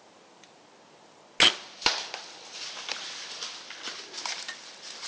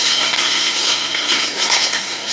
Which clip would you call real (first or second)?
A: first